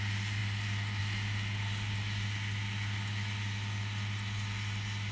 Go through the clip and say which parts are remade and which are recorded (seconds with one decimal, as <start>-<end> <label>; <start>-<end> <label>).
0.0-5.1 recorded